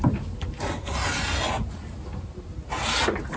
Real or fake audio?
real